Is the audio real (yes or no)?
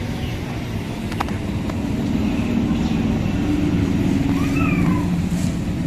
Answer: yes